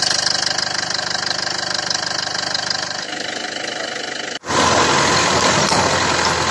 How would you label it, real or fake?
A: real